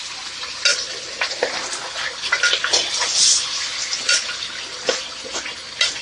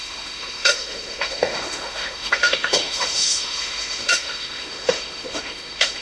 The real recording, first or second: first